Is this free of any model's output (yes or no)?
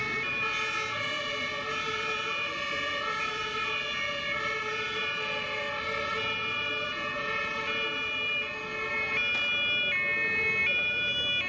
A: yes